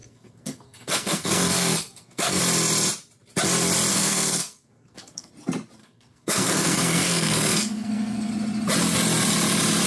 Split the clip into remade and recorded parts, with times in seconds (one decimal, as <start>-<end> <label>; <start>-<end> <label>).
0.0-2.4 remade; 2.4-3.9 recorded; 3.9-5.3 remade; 5.3-5.8 recorded; 5.8-8.3 remade; 8.3-9.9 recorded